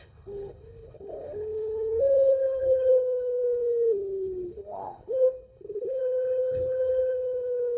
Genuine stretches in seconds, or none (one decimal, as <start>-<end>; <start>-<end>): none